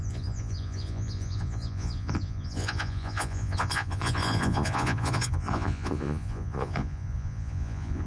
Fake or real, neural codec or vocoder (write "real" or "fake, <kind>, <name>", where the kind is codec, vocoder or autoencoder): fake, vocoder, Vocos